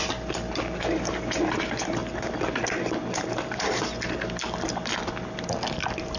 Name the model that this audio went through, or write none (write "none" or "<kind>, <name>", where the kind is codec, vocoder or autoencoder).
vocoder, BigVGAN v2